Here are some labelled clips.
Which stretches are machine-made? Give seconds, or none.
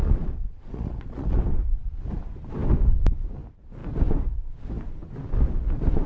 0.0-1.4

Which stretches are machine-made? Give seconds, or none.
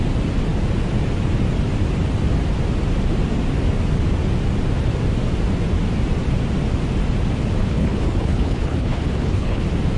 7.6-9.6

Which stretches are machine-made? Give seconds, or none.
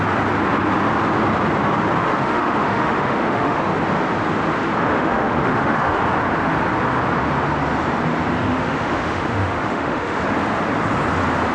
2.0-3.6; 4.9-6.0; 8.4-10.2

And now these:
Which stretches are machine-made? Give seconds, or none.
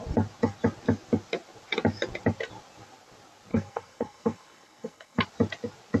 3.5-5.2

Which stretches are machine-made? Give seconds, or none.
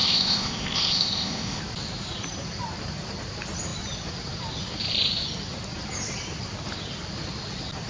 0.0-1.6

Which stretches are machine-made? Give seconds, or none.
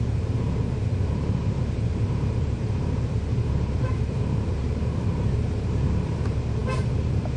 0.0-7.4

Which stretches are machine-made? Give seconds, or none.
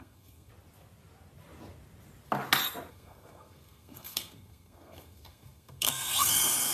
0.0-0.5; 2.9-6.7